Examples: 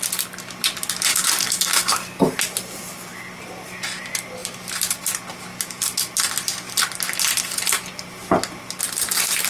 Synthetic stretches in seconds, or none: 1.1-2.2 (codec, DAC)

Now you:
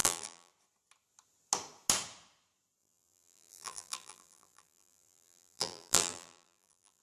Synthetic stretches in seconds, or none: 0.0-0.5 (vocoder, BigVGAN v2); 2.8-7.0

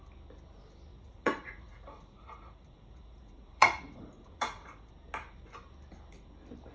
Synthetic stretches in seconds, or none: 0.9-4.9 (vocoder, Vocos)